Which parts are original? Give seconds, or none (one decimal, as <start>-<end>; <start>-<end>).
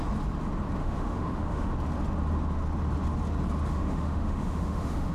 0.0-0.8; 1.7-3.7